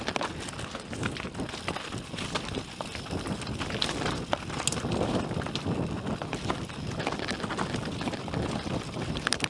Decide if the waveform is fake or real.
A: real